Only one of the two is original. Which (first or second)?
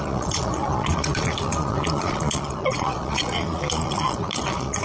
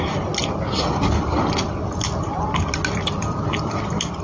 second